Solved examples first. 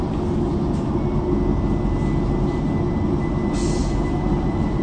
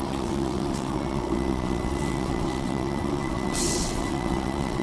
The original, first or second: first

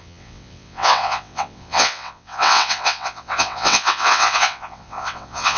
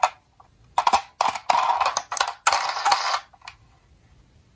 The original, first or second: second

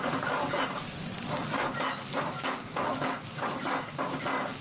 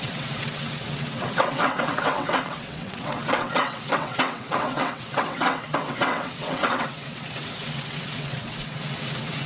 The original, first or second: first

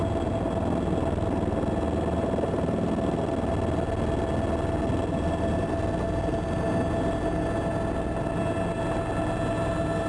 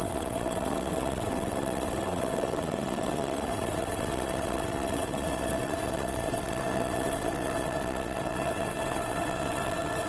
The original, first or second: first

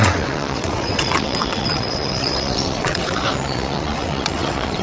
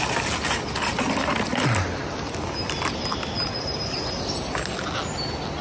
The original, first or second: second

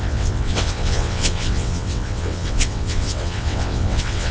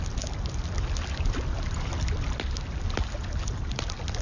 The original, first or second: second